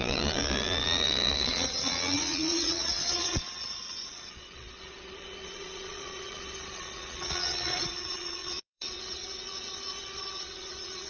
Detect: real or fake fake